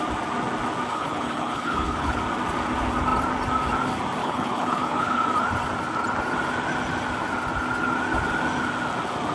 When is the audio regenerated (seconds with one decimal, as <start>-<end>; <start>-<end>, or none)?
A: 0.9-2.2; 4.2-5.2